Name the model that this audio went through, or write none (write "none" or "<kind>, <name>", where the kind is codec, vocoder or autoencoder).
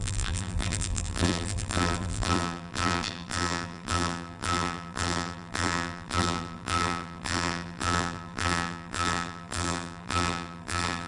vocoder, BigVGAN v2